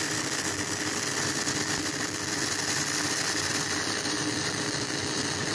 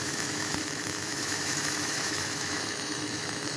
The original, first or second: first